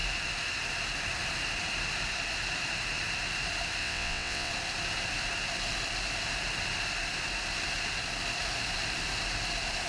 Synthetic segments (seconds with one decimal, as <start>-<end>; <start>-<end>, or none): 3.8-4.5